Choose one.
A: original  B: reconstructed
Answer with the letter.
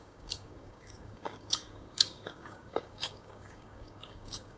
B